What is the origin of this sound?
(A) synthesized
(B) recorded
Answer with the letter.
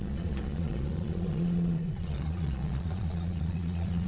A